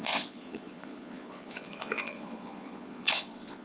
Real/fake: fake